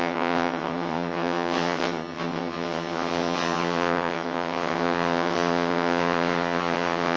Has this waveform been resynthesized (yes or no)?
yes